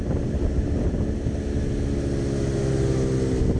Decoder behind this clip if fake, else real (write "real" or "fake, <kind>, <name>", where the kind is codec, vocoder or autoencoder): real